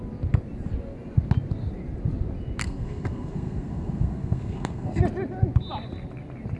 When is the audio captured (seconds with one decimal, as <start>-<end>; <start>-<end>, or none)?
0.0-2.6; 5.0-6.6